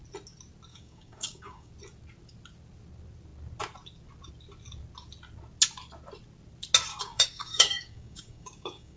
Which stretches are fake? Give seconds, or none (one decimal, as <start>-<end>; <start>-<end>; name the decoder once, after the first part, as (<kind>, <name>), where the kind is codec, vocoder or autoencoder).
0.7-1.7 (codec, DAC); 6.9-9.0